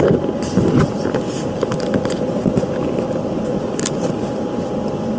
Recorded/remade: recorded